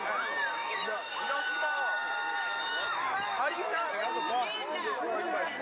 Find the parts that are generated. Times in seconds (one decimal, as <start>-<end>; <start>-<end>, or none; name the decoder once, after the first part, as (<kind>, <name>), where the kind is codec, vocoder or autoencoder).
0.5-3.9 (autoencoder, DAC-VAE)

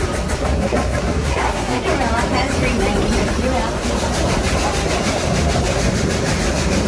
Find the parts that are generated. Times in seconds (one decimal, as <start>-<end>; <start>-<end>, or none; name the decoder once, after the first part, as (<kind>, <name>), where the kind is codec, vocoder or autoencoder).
0.4-1.8 (codec, SNAC)

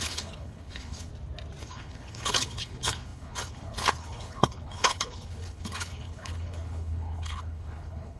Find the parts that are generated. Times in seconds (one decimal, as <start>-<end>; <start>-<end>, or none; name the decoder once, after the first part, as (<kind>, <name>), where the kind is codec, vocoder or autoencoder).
0.0-1.1 (codec, HILCodec); 1.6-8.2

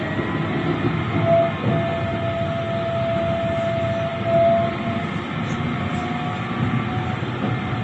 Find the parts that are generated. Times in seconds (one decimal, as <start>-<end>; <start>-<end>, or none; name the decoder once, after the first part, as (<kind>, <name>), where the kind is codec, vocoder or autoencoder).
none